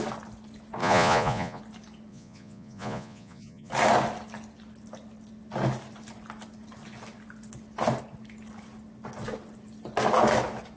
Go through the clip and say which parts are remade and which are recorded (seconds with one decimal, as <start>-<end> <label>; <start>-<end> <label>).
0.0-0.8 recorded; 0.8-1.6 remade; 1.6-2.1 recorded; 2.1-3.7 remade; 3.7-10.8 recorded